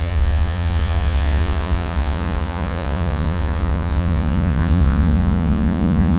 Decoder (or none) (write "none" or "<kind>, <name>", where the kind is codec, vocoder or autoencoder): vocoder, Vocos